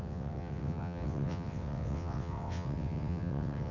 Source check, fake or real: fake